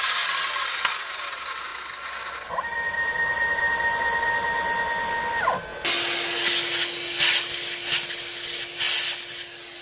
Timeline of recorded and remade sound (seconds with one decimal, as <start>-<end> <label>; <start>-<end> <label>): 0.0-9.8 recorded